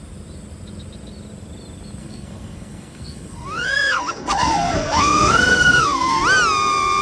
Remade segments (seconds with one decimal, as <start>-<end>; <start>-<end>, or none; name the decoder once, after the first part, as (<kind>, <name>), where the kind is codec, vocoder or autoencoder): 2.0-6.2 (codec, SNAC)